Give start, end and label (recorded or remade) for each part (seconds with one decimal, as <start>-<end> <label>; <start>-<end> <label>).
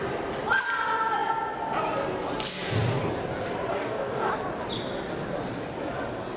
0.0-3.7 recorded; 3.7-4.3 remade; 4.3-6.4 recorded